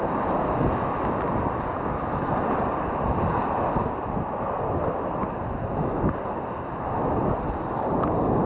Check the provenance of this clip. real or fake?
real